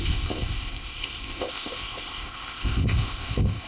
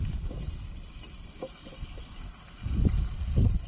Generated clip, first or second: first